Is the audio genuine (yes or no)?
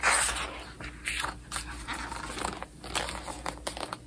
yes